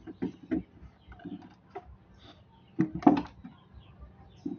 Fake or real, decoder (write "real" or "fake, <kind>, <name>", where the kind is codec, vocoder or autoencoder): real